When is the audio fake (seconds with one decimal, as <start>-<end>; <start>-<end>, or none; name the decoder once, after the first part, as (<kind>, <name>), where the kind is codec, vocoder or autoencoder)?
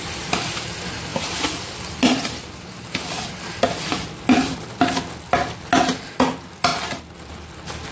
none